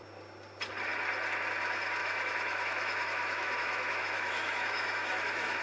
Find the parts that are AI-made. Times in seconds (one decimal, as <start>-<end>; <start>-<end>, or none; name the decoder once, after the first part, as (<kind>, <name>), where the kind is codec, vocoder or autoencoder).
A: 2.0-5.6 (autoencoder, DAC-VAE)